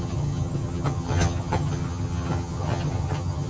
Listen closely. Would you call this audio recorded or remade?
remade